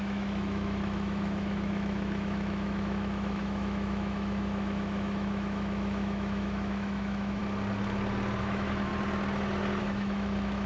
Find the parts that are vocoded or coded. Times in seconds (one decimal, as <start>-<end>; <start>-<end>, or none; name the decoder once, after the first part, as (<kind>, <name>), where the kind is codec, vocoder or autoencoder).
0.0-7.4 (autoencoder, DAC-VAE); 8.4-8.9; 9.8-10.7